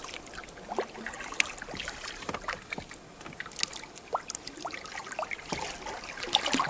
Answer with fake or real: real